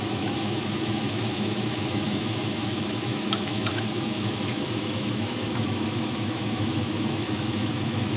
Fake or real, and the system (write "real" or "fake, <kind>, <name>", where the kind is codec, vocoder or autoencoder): fake, autoencoder, DAC-VAE